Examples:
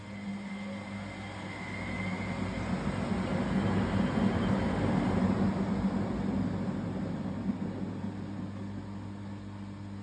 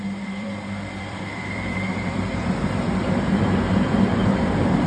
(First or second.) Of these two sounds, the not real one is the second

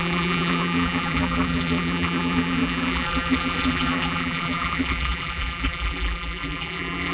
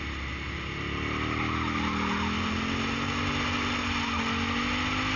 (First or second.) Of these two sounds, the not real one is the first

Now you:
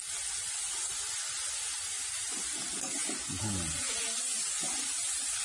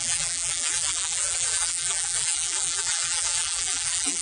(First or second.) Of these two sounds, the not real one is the second